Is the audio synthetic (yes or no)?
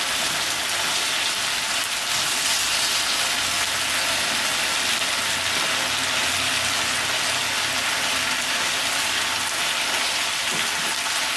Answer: no